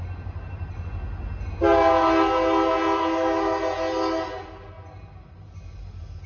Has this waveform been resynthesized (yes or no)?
no